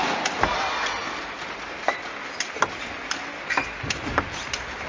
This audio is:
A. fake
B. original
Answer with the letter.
B